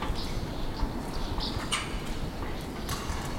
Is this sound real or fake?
real